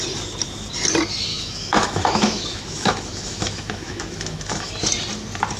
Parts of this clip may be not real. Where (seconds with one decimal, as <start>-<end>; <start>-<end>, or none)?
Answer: 1.3-4.7